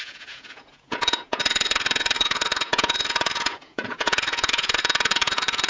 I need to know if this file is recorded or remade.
remade